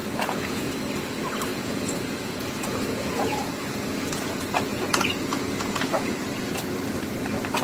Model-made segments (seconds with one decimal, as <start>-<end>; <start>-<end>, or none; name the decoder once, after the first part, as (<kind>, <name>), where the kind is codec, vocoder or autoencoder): 0.0-0.7 (vocoder, Vocos); 1.5-3.5; 4.7-6.2